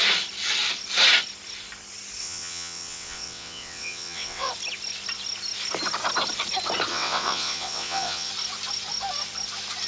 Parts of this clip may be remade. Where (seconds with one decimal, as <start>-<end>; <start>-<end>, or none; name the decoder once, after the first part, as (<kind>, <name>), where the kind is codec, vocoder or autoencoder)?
2.2-4.5 (vocoder, WaveNeXt); 6.9-8.3